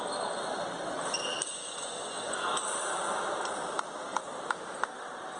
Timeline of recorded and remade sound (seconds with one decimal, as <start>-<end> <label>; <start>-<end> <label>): 0.0-1.5 recorded; 1.5-2.6 remade; 2.6-5.4 recorded